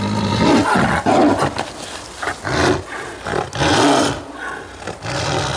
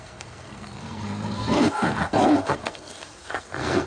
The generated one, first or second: second